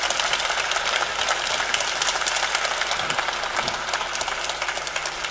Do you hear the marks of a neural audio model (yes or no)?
no